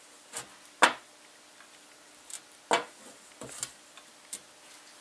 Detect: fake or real real